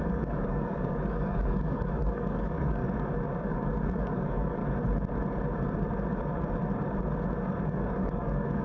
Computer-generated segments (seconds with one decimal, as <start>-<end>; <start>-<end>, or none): 0.0-2.8; 3.4-4.6; 7.6-8.6